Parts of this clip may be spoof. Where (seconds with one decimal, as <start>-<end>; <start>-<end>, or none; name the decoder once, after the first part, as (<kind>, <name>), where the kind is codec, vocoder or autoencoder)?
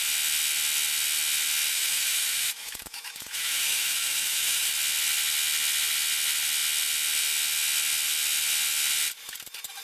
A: 1.7-4.7 (autoencoder, DAC-VAE)